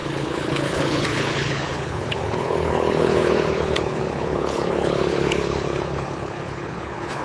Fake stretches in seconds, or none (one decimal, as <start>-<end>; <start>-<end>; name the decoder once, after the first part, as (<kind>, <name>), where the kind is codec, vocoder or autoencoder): 0.0-7.2 (codec, HILCodec)